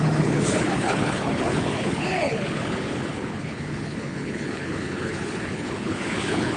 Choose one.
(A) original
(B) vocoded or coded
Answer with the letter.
B